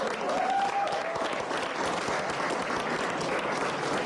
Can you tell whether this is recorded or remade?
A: recorded